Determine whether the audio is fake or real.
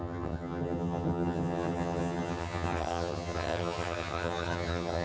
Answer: fake